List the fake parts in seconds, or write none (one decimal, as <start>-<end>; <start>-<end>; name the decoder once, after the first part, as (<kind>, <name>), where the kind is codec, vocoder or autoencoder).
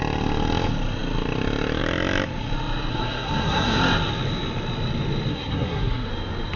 2.9-3.8 (codec, SNAC); 5.3-6.1